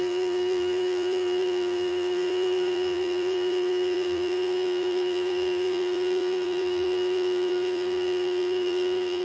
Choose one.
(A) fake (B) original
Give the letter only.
A